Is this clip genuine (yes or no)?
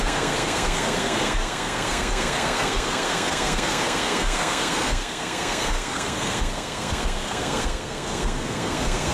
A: no